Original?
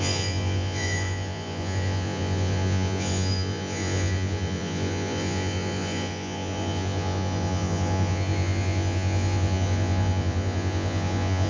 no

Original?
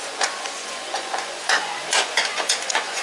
no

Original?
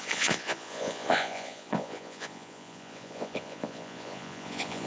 no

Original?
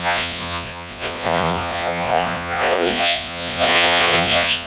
no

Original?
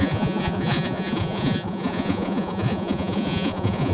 no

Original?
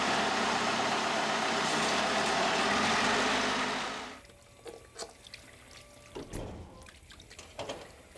yes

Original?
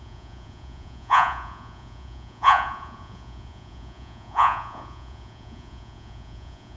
no